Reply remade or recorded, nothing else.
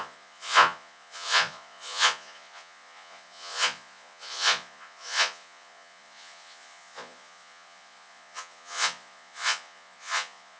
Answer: remade